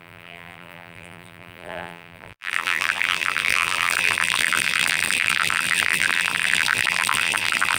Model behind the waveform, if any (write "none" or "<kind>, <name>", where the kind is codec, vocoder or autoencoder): vocoder, BigVGAN v2